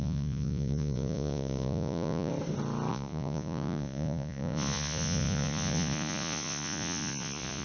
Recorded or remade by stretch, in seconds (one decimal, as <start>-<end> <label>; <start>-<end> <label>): 0.0-2.3 remade; 2.3-2.9 recorded; 2.9-7.6 remade